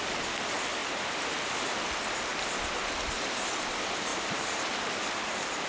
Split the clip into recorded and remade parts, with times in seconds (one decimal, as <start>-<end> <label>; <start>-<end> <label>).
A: 0.0-0.8 recorded; 0.8-1.3 remade; 1.3-4.1 recorded; 4.1-4.7 remade; 4.7-5.7 recorded